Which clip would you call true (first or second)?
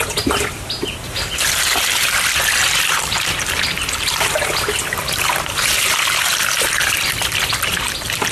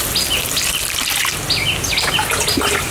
second